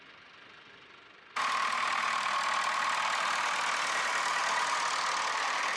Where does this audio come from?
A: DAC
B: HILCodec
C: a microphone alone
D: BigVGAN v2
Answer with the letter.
C